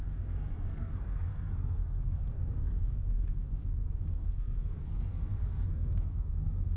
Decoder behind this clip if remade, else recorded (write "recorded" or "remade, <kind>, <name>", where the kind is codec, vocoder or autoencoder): remade, codec, SNAC